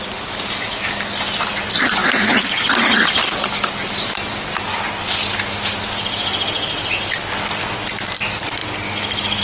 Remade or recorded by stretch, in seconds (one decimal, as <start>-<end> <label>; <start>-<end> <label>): 0.0-9.4 recorded